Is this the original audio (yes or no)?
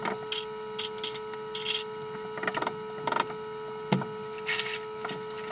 yes